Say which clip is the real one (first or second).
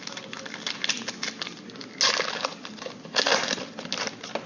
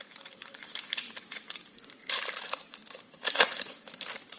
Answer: first